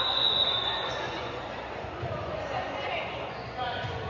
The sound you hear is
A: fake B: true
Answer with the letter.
A